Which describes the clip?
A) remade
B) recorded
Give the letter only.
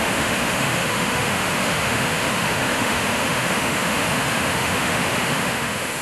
A